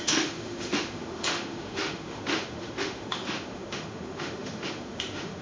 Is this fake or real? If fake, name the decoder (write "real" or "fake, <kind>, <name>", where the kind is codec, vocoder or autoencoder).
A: fake, autoencoder, DAC-VAE